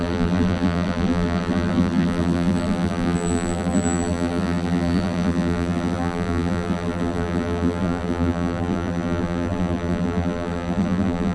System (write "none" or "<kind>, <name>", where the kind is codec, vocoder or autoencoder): vocoder, BigVGAN v2